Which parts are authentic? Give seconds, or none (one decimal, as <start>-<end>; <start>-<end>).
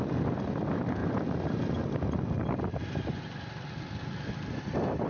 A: 0.0-5.1